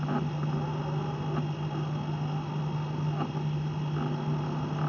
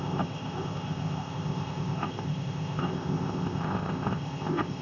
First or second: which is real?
first